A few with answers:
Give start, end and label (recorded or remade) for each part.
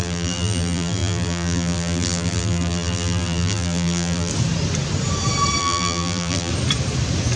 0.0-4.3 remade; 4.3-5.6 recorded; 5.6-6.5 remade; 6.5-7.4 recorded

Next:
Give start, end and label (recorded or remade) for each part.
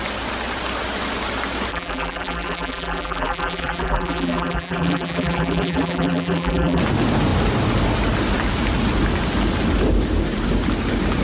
0.0-1.7 recorded; 1.7-6.8 remade; 6.8-11.2 recorded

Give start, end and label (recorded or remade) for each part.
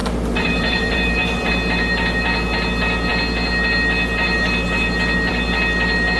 0.0-1.5 remade; 1.5-6.2 recorded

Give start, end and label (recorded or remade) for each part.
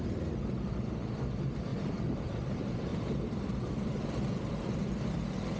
0.0-1.7 recorded; 1.7-2.2 remade; 2.2-5.6 recorded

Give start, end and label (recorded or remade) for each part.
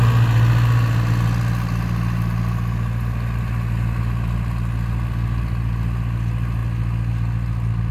0.0-7.9 recorded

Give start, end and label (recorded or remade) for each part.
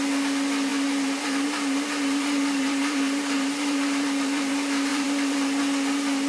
0.0-0.7 recorded; 0.7-4.5 remade; 4.5-4.9 recorded; 4.9-5.6 remade; 5.6-6.3 recorded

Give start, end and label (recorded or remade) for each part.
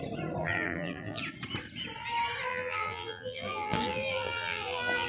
0.0-0.4 recorded; 0.4-1.2 remade; 1.2-2.5 recorded; 2.5-5.1 remade